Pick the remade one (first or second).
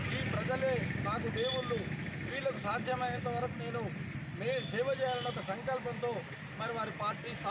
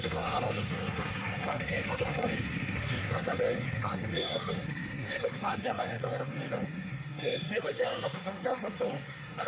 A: second